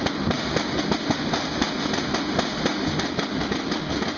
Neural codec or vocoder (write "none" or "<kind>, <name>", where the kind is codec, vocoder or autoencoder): none